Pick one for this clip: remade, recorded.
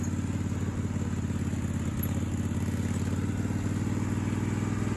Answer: recorded